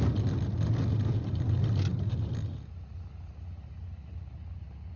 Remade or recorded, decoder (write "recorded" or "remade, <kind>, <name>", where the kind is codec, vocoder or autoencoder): recorded